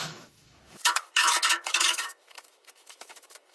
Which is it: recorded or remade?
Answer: remade